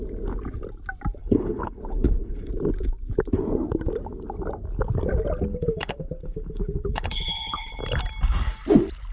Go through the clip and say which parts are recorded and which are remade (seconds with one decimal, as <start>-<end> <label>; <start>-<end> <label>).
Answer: 0.0-1.2 recorded; 1.2-2.5 remade; 2.5-5.5 recorded; 5.5-7.8 remade; 7.8-9.1 recorded